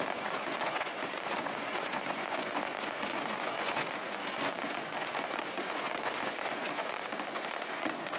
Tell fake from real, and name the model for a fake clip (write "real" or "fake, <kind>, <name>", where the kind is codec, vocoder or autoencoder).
fake, vocoder, Vocos